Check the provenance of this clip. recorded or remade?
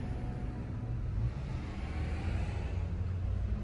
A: recorded